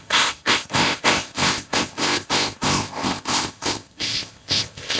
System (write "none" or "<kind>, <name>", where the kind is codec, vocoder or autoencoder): codec, ZipCodec